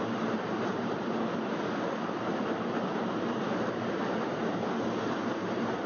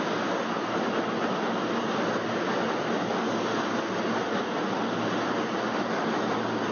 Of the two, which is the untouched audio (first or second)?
second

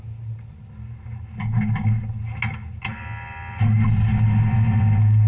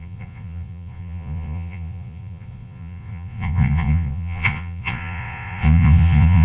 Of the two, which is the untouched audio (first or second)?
first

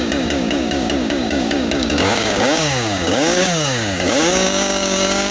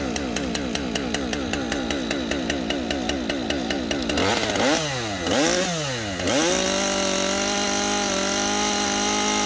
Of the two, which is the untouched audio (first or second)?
second